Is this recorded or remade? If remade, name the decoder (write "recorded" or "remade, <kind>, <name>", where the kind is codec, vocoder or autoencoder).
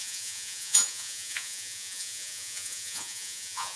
remade, vocoder, Vocos